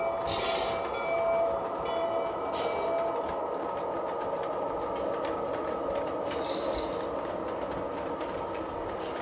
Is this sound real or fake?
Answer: real